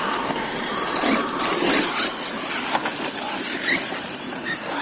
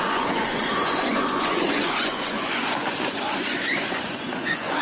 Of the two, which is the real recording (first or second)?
first